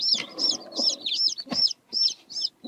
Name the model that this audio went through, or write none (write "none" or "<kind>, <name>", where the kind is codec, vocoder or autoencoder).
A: none